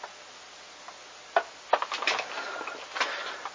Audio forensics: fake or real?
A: real